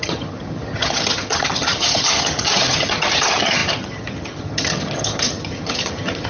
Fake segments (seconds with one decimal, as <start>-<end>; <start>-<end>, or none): 0.0-6.3